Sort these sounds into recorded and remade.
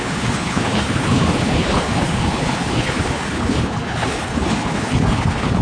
remade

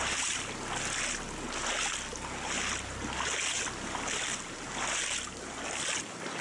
recorded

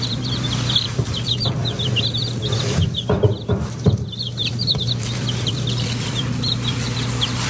remade